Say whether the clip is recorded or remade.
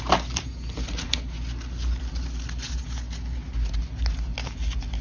recorded